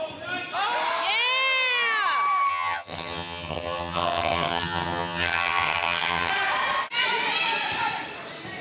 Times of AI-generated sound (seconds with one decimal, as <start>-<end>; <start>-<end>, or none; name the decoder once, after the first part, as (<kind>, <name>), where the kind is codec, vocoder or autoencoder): 2.5-6.3 (vocoder, HiFi-GAN)